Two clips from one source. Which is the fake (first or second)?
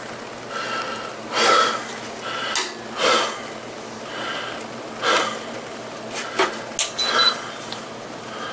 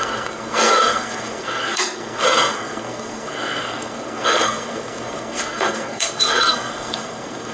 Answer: second